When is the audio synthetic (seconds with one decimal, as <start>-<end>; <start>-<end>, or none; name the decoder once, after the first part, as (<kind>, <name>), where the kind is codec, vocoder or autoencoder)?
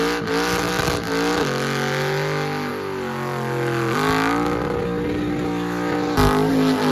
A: none